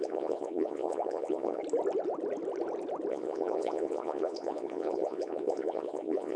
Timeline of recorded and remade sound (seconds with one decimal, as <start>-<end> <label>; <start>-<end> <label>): 0.0-1.6 remade; 1.6-3.1 recorded; 3.1-6.4 remade